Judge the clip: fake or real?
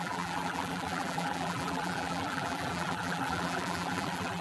fake